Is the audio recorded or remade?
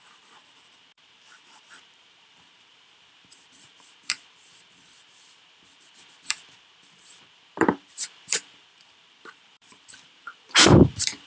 remade